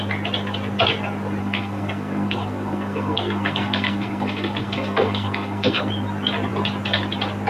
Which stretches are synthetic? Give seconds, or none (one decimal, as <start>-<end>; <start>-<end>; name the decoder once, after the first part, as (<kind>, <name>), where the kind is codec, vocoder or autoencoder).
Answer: 1.4-5.9 (codec, SNAC)